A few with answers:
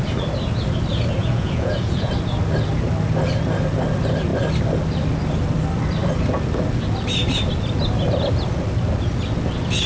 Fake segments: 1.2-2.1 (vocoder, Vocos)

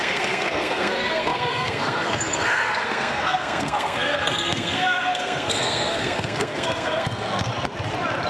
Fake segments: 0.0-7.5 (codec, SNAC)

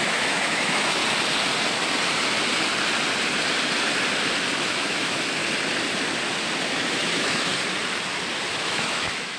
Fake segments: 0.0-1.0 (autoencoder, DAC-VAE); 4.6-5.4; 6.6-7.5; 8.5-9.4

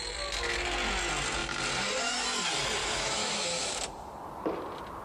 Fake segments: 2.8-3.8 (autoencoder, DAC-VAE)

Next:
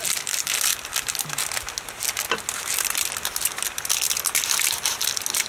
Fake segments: none

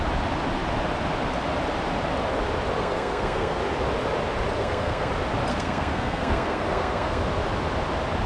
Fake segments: 2.8-3.6 (codec, SNAC); 4.6-5.1; 5.5-7.2